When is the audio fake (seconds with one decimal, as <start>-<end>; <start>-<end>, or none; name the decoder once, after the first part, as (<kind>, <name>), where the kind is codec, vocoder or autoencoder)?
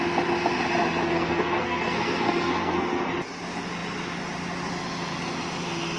1.0-3.1 (codec, SNAC)